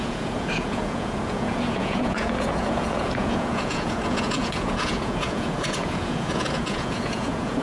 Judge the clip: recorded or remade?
remade